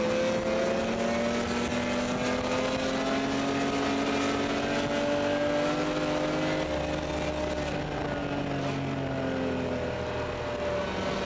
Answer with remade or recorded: recorded